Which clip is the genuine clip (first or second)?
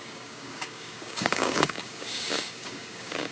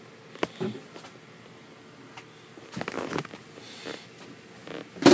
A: second